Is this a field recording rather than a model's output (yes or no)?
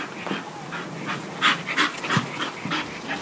yes